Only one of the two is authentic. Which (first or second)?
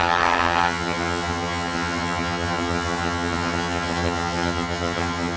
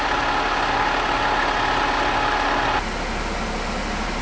second